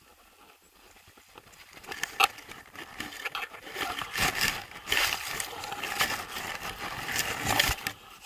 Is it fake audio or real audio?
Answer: real